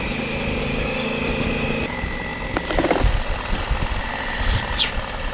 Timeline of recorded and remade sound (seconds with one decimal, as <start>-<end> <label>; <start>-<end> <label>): 0.0-0.6 recorded; 0.6-1.3 remade; 1.3-5.3 recorded

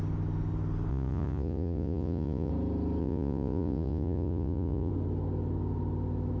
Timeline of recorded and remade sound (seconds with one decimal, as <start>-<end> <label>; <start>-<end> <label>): 0.0-0.9 recorded; 0.9-2.5 remade; 2.5-3.0 recorded; 3.0-4.9 remade; 4.9-6.4 recorded

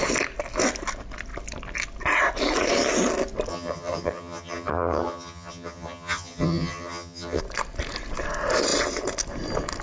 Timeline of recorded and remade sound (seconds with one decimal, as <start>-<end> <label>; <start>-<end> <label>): 0.0-3.5 recorded; 3.5-7.4 remade; 7.4-9.8 recorded

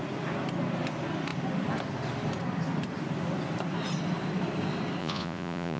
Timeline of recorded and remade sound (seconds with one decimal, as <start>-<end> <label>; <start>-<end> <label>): 0.0-5.0 recorded; 5.0-5.8 remade